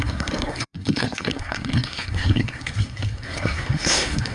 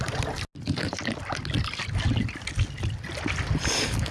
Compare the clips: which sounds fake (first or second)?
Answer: first